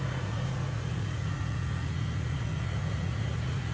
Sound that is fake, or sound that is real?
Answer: fake